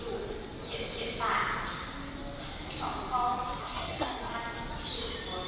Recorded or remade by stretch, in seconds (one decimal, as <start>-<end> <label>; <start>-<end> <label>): 0.0-3.6 recorded; 3.6-4.3 remade; 4.3-5.5 recorded